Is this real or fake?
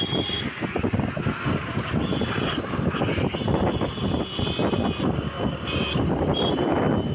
real